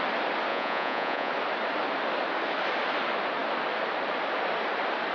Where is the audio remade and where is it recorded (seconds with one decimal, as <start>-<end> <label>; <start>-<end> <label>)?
0.0-0.5 recorded; 0.5-1.3 remade; 1.3-5.1 recorded

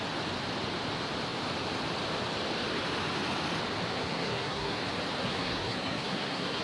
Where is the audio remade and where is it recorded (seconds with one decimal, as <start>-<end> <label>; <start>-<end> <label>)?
0.0-4.0 recorded; 4.0-4.8 remade; 4.8-5.2 recorded; 5.2-6.6 remade

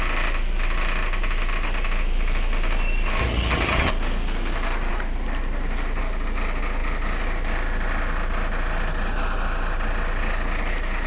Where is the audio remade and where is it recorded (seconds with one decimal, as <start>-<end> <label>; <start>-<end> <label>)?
0.0-3.2 recorded; 3.2-3.9 remade; 3.9-11.1 recorded

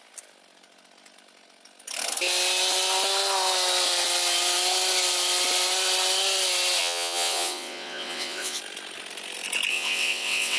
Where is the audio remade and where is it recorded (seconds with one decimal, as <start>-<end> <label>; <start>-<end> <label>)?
0.0-6.8 recorded; 6.8-8.6 remade; 8.6-9.7 recorded; 9.7-10.6 remade

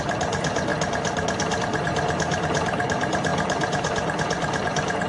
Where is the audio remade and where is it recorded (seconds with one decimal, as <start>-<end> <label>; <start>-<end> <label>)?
0.0-0.7 remade; 0.7-1.6 recorded; 1.6-5.1 remade